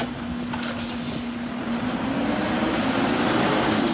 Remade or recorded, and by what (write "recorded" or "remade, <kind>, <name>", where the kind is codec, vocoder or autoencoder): recorded